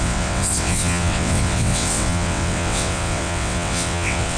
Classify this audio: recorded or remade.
remade